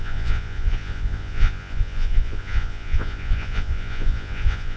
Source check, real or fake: fake